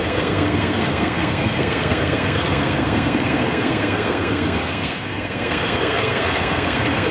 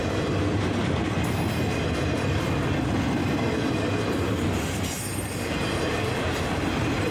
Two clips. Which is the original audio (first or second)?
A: second